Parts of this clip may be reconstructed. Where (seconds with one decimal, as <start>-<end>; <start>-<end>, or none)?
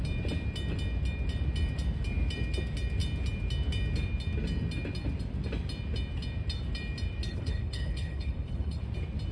7.3-8.8